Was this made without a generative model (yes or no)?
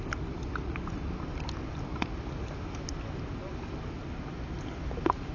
yes